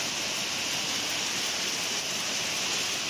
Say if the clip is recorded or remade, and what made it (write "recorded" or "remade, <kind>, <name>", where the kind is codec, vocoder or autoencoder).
recorded